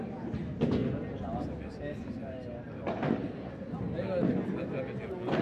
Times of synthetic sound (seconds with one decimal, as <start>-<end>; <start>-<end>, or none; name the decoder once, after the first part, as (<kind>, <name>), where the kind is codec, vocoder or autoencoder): none